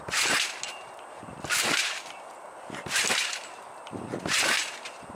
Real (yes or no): yes